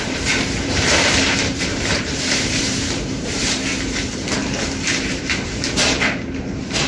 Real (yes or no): no